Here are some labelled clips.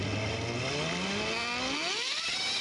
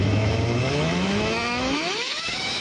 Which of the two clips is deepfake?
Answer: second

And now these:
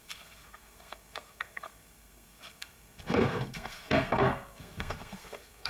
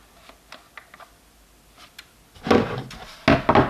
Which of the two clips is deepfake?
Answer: first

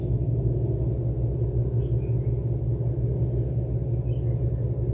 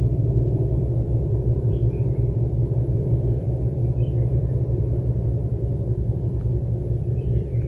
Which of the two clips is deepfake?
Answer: second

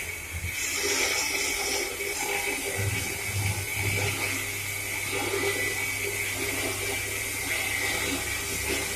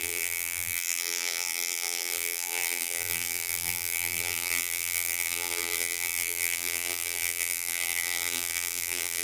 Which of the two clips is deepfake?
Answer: second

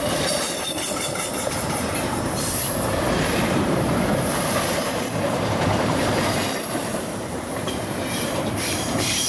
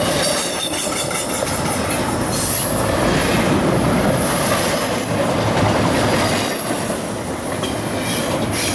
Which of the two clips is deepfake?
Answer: first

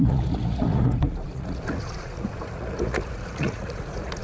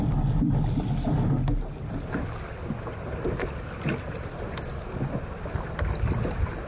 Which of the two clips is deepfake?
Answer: first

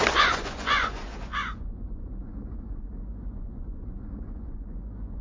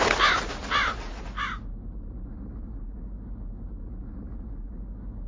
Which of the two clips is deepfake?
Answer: first